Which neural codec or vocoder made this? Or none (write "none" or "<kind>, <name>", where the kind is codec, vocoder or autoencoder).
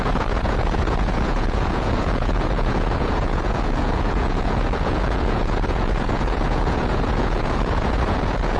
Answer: vocoder, Vocos